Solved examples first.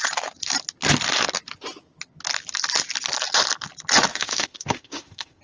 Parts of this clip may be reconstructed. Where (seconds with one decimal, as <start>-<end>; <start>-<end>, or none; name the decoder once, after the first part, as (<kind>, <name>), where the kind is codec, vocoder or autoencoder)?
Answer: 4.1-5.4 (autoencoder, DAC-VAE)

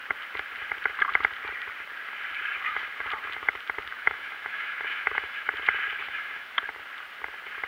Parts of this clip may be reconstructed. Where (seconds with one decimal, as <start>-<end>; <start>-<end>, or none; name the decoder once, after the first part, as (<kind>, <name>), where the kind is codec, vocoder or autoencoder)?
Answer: 3.9-5.5 (autoencoder, DAC-VAE); 6.0-6.6

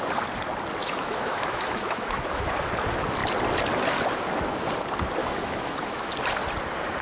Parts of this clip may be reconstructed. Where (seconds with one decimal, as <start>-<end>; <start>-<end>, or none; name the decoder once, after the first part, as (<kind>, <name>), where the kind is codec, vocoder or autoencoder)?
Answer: 0.8-2.4 (autoencoder, DAC-VAE); 5.2-6.1